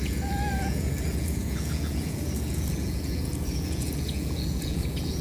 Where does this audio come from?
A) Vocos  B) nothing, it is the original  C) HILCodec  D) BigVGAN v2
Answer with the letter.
A